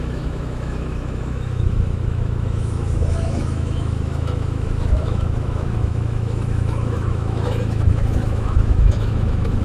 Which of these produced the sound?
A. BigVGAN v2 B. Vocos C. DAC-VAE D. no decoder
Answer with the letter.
C